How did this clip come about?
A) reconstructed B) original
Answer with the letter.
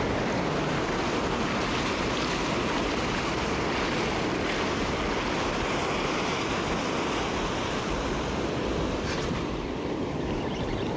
B